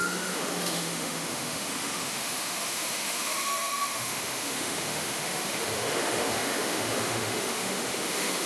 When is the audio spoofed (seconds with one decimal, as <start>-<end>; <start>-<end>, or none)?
0.0-8.5